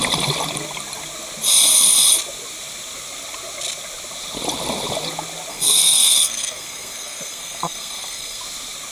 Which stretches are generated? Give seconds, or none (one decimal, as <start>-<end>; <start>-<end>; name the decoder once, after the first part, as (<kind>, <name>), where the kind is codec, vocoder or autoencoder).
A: 5.5-8.4 (codec, SNAC)